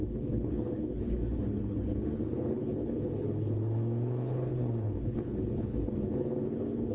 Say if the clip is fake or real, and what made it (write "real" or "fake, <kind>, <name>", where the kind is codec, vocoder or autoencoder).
fake, codec, HILCodec